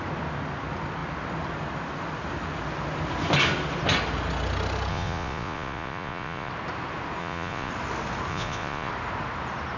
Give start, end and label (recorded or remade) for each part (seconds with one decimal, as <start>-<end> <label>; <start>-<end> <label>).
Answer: 0.0-4.9 recorded; 4.9-6.5 remade; 6.5-7.2 recorded; 7.2-7.7 remade; 7.7-8.3 recorded; 8.3-8.9 remade; 8.9-9.8 recorded